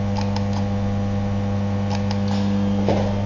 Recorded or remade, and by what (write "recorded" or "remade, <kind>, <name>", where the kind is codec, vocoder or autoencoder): recorded